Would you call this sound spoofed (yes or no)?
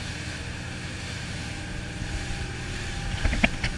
yes